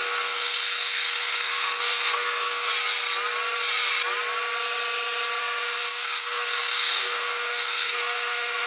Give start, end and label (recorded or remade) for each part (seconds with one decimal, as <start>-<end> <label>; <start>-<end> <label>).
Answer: 0.0-2.7 remade; 2.7-5.4 recorded; 5.4-8.7 remade